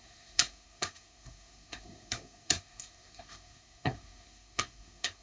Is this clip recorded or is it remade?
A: remade